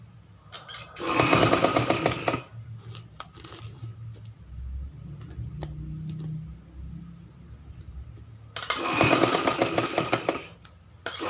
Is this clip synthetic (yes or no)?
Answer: no